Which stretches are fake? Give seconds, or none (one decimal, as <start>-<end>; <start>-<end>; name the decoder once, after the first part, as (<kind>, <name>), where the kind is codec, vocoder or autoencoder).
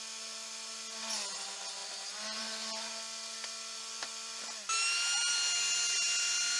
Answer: none